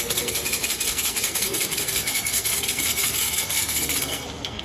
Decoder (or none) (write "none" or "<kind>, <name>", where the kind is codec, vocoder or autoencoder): codec, SNAC